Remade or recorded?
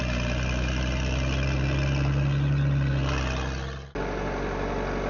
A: recorded